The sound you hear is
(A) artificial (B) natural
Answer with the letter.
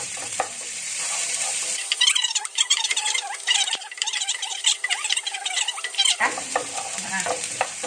A